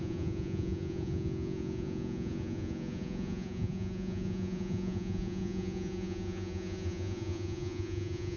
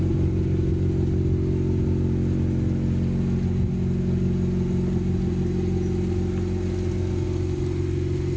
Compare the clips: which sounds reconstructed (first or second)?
first